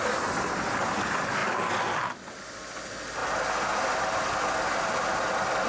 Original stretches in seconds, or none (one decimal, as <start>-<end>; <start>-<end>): 0.0-5.7